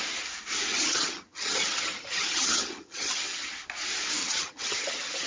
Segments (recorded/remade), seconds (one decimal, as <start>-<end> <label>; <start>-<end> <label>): 0.0-0.7 recorded; 0.7-3.5 remade; 3.5-4.2 recorded; 4.2-5.3 remade